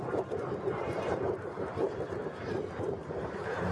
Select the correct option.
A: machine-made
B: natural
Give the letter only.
A